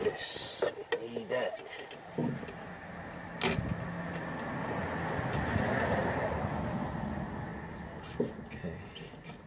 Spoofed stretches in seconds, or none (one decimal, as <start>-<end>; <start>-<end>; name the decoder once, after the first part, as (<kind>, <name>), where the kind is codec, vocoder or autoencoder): none